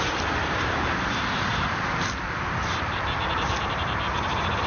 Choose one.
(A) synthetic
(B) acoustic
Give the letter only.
A